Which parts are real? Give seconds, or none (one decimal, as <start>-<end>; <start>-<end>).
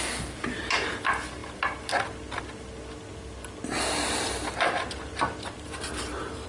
0.0-6.5